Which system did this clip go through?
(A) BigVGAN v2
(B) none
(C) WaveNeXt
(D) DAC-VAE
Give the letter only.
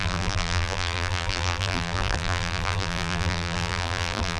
A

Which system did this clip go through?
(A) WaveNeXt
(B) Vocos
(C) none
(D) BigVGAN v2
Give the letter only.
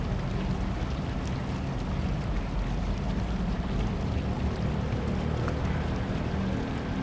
C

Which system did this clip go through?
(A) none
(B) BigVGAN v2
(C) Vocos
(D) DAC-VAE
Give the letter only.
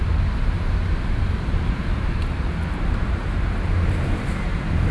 B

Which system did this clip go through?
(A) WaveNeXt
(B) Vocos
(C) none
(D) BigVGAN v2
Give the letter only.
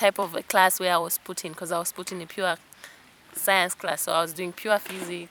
D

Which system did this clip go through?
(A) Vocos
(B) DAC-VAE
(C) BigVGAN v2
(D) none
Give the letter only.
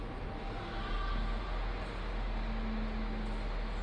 D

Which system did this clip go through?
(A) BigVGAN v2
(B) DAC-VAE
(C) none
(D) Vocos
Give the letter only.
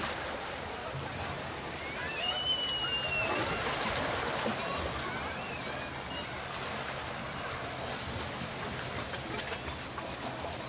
C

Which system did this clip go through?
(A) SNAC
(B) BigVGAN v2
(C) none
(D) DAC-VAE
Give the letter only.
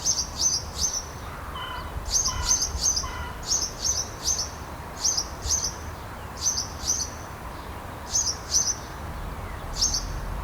B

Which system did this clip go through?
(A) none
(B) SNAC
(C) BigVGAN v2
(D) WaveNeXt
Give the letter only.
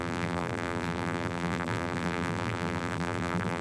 C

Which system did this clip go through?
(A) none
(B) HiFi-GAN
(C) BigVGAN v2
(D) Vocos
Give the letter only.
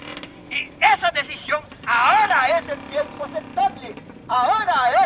C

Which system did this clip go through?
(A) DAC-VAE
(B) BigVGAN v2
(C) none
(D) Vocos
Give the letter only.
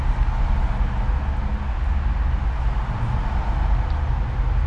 C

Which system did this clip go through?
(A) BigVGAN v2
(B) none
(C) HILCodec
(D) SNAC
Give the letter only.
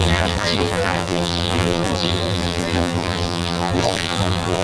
A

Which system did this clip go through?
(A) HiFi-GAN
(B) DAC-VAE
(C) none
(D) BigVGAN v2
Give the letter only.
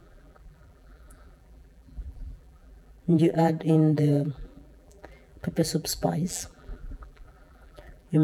D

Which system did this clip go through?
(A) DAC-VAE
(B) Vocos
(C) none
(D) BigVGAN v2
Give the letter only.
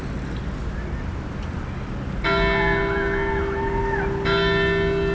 C